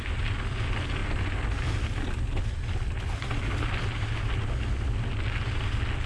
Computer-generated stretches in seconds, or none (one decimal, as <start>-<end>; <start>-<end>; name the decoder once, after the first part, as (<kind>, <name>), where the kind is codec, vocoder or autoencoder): none